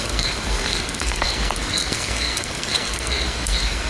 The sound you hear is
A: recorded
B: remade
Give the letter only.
B